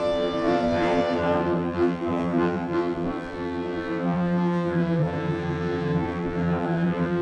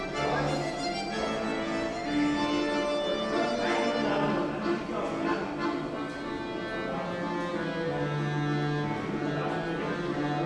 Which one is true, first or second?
second